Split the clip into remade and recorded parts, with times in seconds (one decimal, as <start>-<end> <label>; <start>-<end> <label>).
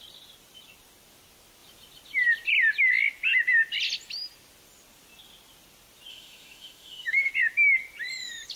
0.0-6.1 recorded; 6.1-7.3 remade; 7.3-8.6 recorded